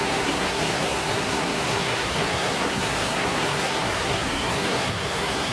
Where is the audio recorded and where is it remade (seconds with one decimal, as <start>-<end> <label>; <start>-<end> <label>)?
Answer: 0.0-5.5 remade